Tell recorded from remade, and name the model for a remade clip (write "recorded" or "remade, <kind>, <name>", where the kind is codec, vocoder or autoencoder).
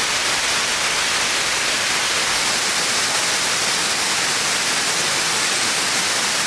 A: recorded